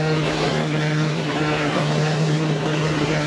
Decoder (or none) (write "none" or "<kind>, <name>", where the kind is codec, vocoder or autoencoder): codec, SNAC